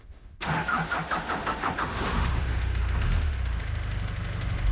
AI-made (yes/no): yes